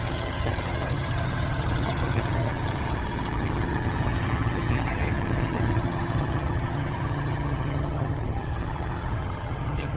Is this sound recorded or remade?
remade